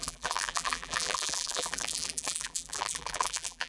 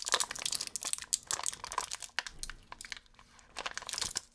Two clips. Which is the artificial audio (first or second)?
first